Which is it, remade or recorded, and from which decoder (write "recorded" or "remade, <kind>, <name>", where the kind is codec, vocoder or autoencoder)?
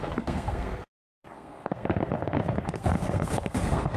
remade, codec, SNAC